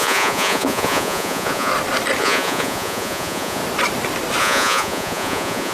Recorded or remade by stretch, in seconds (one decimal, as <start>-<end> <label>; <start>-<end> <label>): 0.0-1.7 remade; 1.7-2.2 recorded; 2.2-3.6 remade; 3.6-4.4 recorded; 4.4-5.7 remade